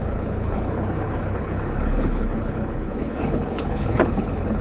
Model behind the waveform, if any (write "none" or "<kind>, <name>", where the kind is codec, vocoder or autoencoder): codec, HILCodec